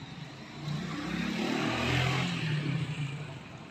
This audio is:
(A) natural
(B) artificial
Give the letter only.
A